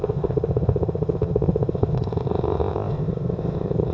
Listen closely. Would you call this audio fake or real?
fake